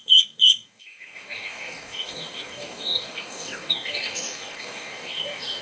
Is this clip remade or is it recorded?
remade